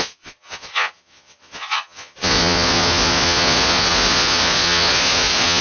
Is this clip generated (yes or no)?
yes